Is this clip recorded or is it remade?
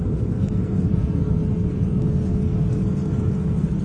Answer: remade